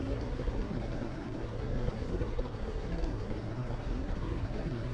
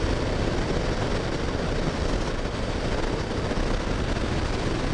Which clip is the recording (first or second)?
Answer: second